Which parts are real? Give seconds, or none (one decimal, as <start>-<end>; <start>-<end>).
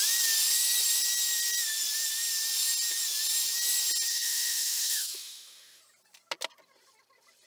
0.0-4.1; 5.8-7.5